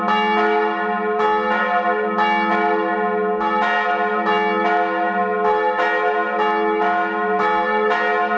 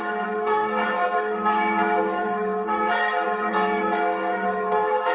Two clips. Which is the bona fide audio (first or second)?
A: first